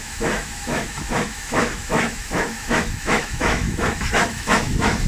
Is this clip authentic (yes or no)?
no